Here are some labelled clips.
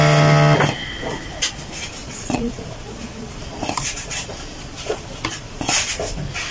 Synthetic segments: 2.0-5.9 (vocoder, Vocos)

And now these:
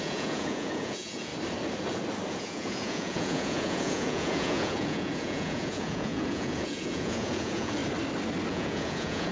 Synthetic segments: 0.0-1.3 (vocoder, Vocos); 2.3-7.8; 8.5-9.3

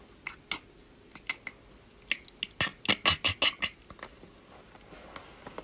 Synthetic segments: none

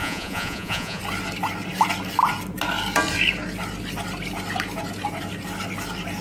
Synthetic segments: 0.0-1.0 (vocoder, Vocos)

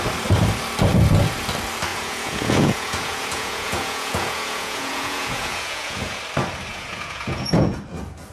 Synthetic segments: 1.9-6.2 (vocoder, Vocos); 6.7-7.8

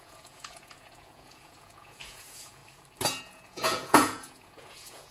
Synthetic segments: 0.0-2.6 (vocoder, Vocos); 3.2-5.1